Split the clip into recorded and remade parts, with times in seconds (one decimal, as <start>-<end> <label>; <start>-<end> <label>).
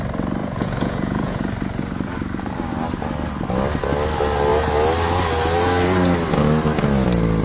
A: 0.0-0.4 recorded; 0.4-1.4 remade; 1.4-7.4 recorded